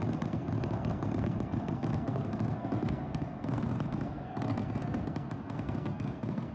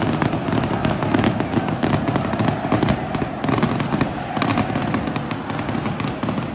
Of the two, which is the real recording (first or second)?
second